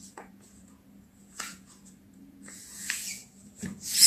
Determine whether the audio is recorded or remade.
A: remade